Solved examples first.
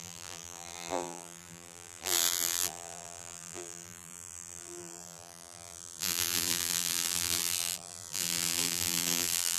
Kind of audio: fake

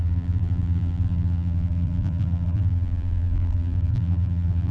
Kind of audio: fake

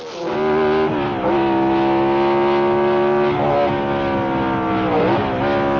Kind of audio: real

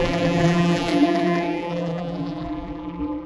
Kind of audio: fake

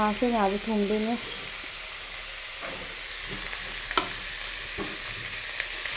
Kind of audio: real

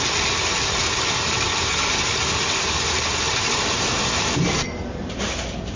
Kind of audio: fake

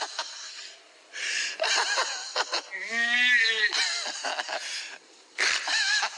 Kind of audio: real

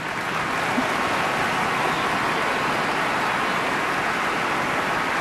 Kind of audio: real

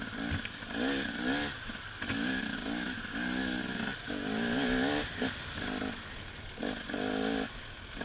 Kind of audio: real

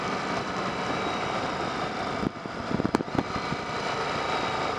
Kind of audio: fake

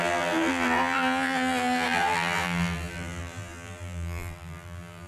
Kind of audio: fake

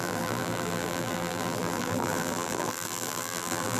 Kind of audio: fake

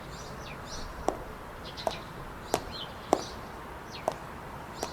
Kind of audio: fake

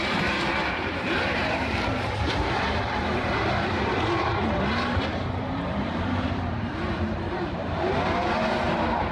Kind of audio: fake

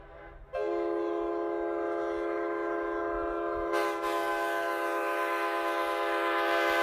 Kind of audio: real